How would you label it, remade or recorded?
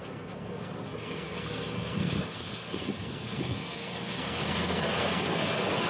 remade